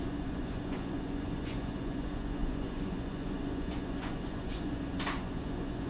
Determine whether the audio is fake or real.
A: fake